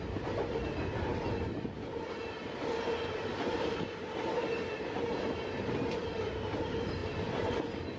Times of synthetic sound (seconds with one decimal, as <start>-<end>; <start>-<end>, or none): none